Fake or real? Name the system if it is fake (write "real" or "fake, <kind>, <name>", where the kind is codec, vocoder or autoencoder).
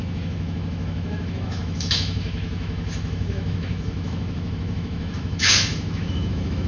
fake, autoencoder, DAC-VAE